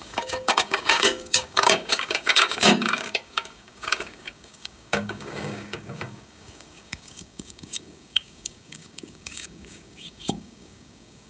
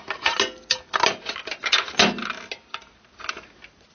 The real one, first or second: second